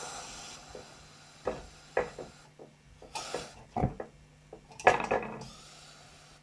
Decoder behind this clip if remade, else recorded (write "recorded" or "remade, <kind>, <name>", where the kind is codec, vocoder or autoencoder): recorded